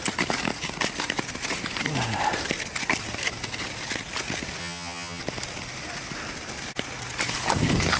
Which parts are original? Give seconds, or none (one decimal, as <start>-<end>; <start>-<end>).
0.0-4.6; 5.2-8.0